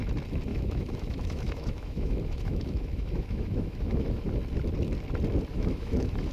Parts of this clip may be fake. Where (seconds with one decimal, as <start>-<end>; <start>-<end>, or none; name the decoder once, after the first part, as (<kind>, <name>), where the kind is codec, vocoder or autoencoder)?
0.5-4.3 (autoencoder, DAC-VAE); 5.5-6.3